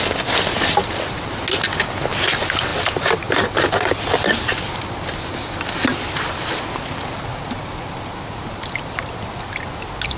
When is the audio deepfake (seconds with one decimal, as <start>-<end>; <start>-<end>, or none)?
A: none